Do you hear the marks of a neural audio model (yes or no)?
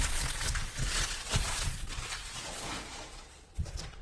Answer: yes